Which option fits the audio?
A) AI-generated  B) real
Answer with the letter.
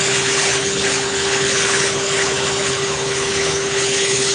A